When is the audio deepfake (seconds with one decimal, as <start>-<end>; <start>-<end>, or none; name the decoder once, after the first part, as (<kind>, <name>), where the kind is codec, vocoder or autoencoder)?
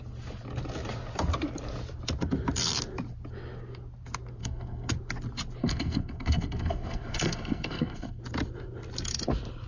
4.4-4.9 (codec, SNAC); 5.6-8.2